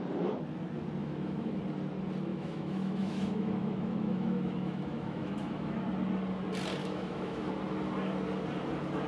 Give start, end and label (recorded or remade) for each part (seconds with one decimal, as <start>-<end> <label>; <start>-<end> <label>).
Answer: 0.0-1.0 recorded; 1.0-1.6 remade; 1.6-2.3 recorded; 2.3-5.7 remade; 5.7-6.8 recorded; 6.8-7.5 remade; 7.5-9.1 recorded